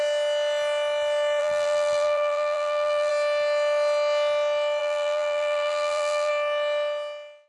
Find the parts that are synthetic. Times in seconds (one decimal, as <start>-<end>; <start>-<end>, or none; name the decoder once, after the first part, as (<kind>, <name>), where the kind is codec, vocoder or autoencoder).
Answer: 1.4-3.1 (vocoder, BigVGAN v2); 4.8-6.3